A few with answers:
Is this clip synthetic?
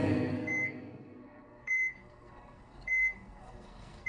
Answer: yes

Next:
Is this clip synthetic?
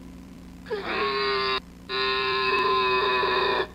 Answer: yes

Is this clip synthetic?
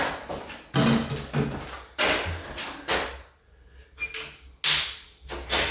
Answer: no